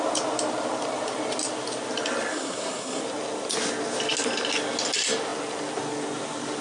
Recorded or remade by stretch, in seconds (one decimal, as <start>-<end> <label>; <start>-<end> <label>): 0.0-2.3 recorded; 2.3-3.0 remade; 3.0-6.6 recorded